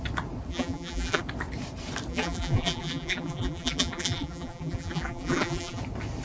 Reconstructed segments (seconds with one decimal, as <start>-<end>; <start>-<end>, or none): 0.5-1.2; 2.1-5.8